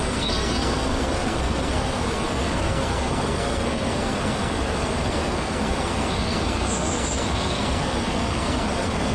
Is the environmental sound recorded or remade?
remade